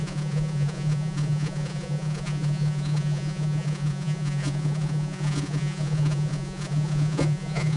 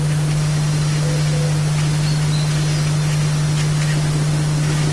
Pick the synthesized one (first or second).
first